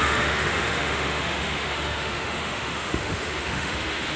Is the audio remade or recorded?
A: remade